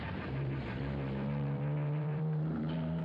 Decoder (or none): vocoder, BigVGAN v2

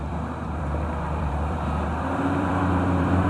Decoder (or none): vocoder, BigVGAN v2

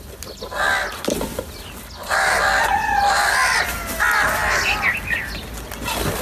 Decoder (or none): none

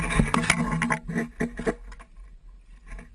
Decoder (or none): none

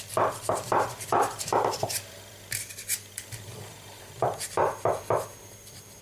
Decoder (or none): vocoder, BigVGAN v2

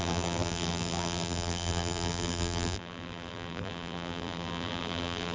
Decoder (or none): vocoder, BigVGAN v2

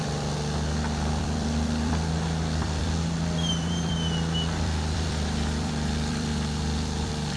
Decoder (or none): vocoder, BigVGAN v2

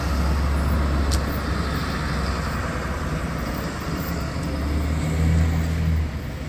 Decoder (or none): none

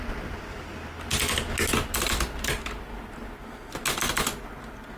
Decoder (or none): none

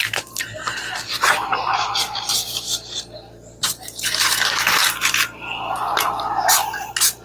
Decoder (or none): vocoder, BigVGAN v2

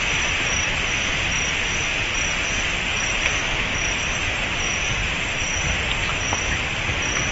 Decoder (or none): vocoder, BigVGAN v2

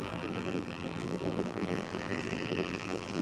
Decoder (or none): vocoder, BigVGAN v2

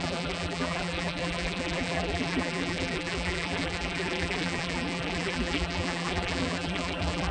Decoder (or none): vocoder, BigVGAN v2